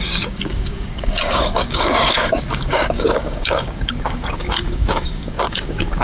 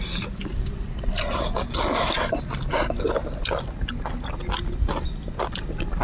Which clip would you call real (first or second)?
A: second